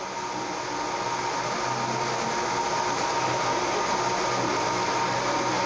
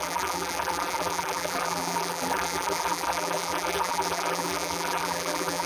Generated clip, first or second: second